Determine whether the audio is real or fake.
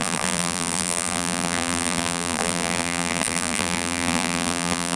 fake